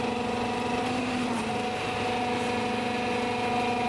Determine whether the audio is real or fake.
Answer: real